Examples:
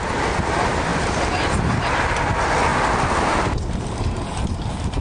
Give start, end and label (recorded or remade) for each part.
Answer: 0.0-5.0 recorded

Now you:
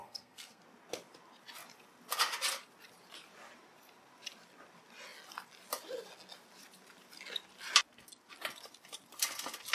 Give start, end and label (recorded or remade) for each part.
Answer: 0.0-0.6 remade; 0.6-9.7 recorded